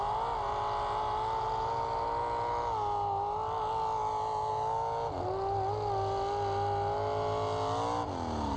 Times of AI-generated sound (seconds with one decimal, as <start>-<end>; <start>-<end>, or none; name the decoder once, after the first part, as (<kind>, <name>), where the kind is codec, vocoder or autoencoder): none